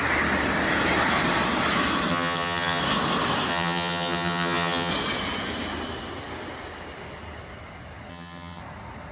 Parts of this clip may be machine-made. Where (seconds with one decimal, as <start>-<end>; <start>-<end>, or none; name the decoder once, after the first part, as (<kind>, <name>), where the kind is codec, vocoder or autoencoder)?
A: 2.1-2.8 (vocoder, HiFi-GAN); 3.5-4.9; 8.1-8.6